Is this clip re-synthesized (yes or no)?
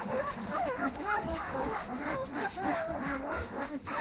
yes